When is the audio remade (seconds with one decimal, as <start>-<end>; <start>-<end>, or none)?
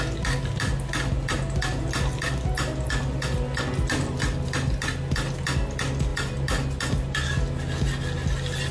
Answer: none